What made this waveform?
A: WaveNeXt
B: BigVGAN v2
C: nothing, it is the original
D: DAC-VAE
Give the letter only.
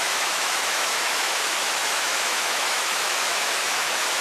D